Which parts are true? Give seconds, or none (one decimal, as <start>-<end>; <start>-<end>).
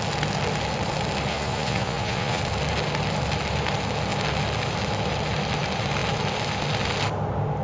0.0-1.3; 2.4-7.6